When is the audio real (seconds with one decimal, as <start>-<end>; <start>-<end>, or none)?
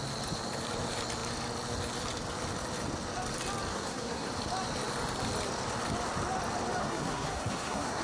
0.0-3.7; 4.3-6.8